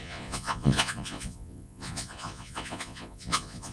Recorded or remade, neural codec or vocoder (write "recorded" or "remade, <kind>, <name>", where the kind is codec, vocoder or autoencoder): remade, vocoder, Vocos